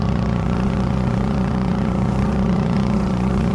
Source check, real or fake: fake